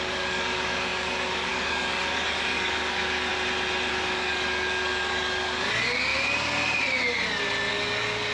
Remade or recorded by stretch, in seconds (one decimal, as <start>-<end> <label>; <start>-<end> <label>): 0.0-3.3 remade; 3.3-3.9 recorded; 3.9-6.1 remade; 6.1-7.7 recorded; 7.7-8.3 remade